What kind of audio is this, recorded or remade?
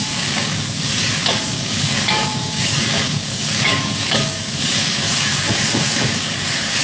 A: remade